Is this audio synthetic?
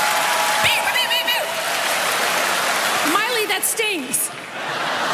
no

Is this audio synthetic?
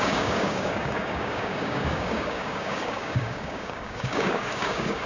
yes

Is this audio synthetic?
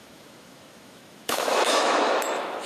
yes